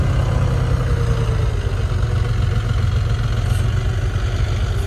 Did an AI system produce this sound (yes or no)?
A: no